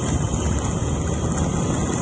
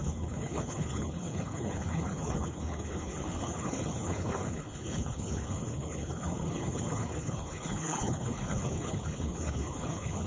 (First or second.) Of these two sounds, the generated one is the second